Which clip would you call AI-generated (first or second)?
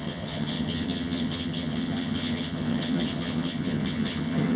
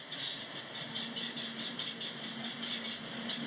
first